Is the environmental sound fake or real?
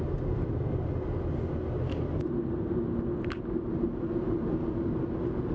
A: real